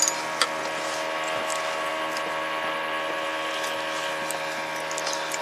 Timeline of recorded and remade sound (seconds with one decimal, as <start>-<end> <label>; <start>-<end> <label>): 0.0-5.4 recorded